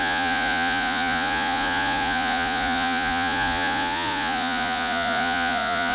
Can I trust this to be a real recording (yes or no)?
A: no